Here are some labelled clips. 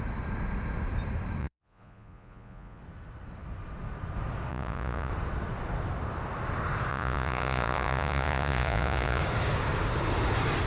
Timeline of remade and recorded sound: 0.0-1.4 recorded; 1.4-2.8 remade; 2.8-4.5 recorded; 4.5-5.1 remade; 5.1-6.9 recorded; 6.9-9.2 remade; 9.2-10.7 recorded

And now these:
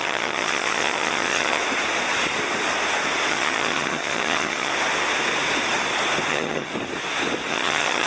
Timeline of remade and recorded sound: 0.0-1.6 remade; 1.6-3.3 recorded; 3.3-4.7 remade; 4.7-6.3 recorded; 6.3-6.7 remade; 6.7-7.5 recorded; 7.5-8.1 remade

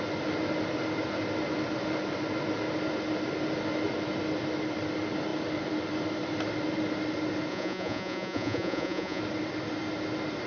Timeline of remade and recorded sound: 0.0-7.5 recorded; 7.5-9.2 remade; 9.2-10.5 recorded

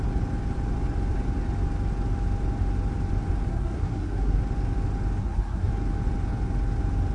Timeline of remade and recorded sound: 0.0-3.5 recorded; 3.5-4.4 remade; 4.4-5.2 recorded; 5.2-5.7 remade; 5.7-7.1 recorded